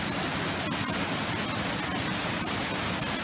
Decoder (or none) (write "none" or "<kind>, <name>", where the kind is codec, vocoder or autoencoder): none